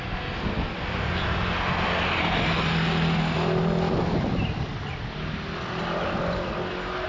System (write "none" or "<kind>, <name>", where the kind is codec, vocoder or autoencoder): none